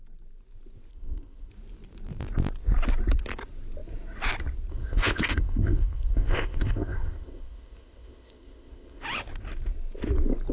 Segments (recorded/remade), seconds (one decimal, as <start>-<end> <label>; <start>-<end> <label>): 0.0-0.9 recorded; 0.9-1.5 remade; 1.5-4.7 recorded; 4.7-9.0 remade; 9.0-10.5 recorded